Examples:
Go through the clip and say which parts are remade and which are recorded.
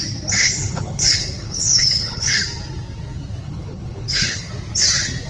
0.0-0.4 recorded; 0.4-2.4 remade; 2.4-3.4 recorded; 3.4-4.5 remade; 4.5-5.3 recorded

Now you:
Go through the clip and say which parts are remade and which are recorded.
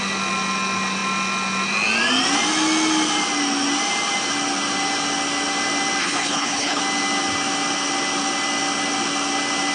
0.0-6.0 recorded; 6.0-6.8 remade; 6.8-9.7 recorded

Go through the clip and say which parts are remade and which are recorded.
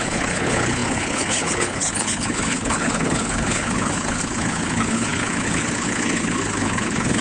0.0-7.2 remade